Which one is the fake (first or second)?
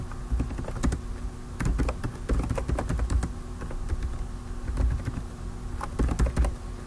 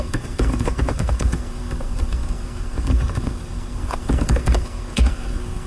second